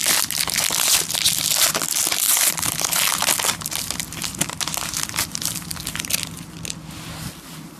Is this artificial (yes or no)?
no